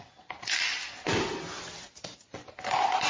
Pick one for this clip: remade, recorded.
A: recorded